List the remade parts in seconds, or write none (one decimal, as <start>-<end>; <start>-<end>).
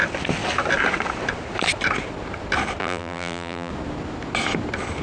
2.8-3.7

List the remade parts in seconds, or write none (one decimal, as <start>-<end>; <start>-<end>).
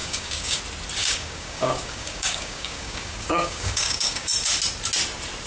0.0-0.6; 1.0-4.3